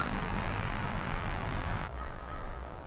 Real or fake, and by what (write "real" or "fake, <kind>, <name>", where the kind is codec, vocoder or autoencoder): fake, vocoder, BigVGAN v2